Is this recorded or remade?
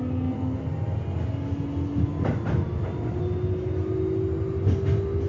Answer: recorded